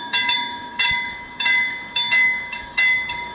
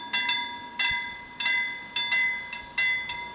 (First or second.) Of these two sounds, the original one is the second